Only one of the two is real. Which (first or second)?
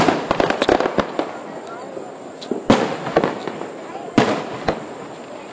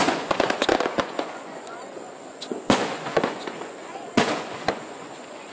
first